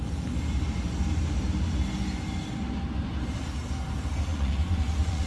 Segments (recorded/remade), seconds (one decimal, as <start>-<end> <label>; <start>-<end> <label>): 0.0-4.3 recorded; 4.3-5.3 remade